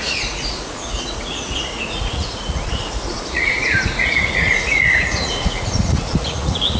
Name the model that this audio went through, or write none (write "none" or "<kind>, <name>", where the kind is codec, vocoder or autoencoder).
vocoder, Vocos